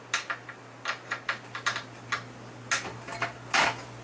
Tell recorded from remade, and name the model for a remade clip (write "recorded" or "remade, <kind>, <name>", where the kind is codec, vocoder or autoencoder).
recorded